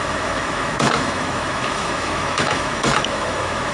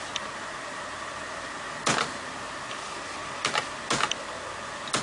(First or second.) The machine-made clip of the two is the first